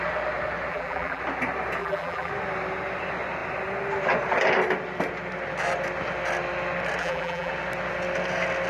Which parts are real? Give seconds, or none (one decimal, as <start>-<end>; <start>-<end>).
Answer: 0.0-0.7; 1.2-1.8; 2.3-7.0; 7.5-8.7

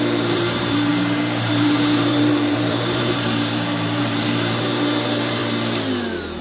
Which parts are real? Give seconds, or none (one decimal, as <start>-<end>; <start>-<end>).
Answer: 5.4-6.4

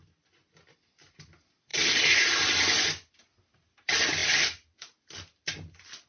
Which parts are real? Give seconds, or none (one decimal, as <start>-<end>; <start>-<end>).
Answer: 0.0-6.1

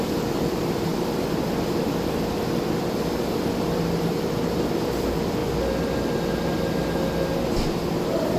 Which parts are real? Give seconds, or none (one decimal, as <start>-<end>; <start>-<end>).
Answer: 5.4-7.9

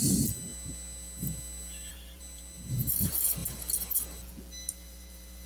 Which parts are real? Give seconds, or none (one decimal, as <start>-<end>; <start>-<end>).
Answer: 0.5-1.9; 3.4-4.7

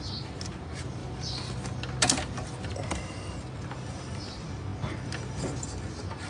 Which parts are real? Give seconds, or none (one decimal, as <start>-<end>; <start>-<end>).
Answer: 0.0-6.3